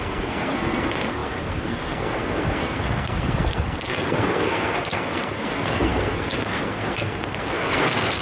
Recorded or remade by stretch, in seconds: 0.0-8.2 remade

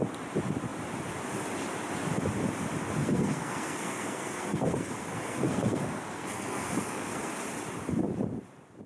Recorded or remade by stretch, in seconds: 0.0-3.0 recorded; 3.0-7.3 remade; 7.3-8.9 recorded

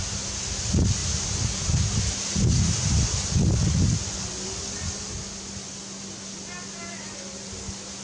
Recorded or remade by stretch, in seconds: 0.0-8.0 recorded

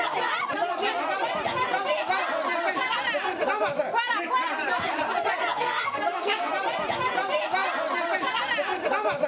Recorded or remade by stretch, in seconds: 0.0-5.5 recorded; 5.5-6.5 remade; 6.5-9.3 recorded

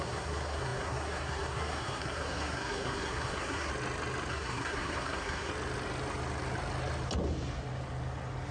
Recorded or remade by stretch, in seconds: 0.0-3.7 remade; 3.7-4.3 recorded; 4.3-5.5 remade; 5.5-8.5 recorded

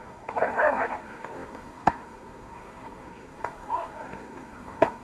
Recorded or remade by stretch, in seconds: 0.0-5.0 remade

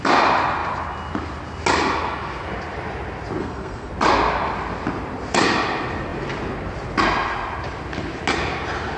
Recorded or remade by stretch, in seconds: 0.0-3.4 recorded; 3.4-3.9 remade; 3.9-9.0 recorded